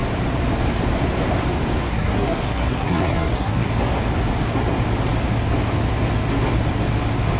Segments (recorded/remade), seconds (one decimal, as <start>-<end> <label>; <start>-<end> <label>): 0.0-1.9 recorded; 1.9-3.7 remade; 3.7-7.4 recorded